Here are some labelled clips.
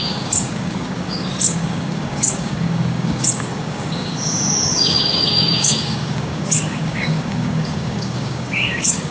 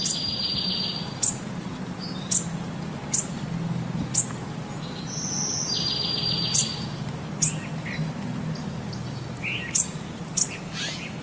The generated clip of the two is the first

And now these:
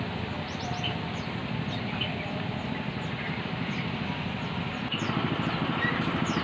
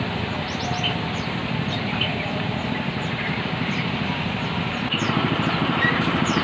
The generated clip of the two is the second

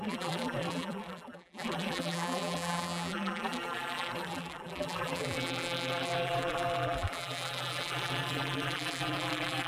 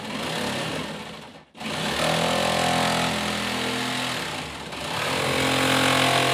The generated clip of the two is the first